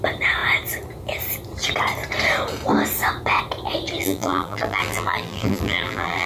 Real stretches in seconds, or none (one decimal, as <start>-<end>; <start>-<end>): 0.0-4.0